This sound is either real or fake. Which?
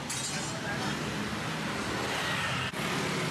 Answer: real